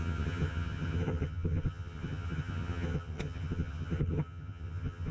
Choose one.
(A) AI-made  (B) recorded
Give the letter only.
A